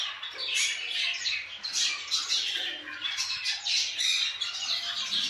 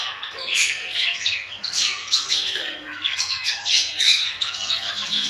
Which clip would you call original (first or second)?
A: first